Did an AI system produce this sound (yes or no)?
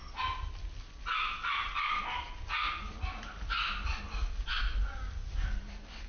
no